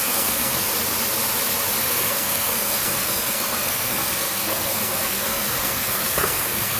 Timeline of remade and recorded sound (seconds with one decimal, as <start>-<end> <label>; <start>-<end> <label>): 0.0-0.7 remade; 0.7-1.8 recorded; 1.8-6.8 remade